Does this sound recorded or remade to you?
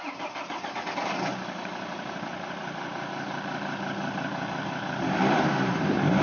recorded